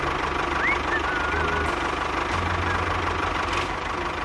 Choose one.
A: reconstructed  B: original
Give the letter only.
B